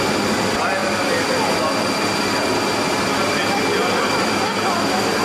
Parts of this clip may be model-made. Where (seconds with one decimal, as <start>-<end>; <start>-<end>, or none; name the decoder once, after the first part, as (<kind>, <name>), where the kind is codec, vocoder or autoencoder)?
none